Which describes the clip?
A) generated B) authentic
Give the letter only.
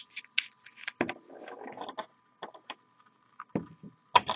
B